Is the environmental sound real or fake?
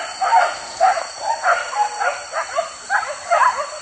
real